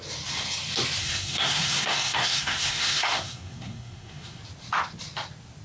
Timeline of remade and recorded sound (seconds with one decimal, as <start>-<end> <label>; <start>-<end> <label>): 0.0-1.0 recorded; 1.0-4.4 remade; 4.4-5.6 recorded